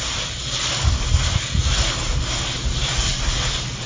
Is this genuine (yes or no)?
yes